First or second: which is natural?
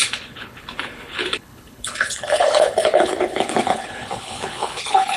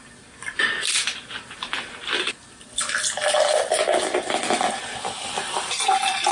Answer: second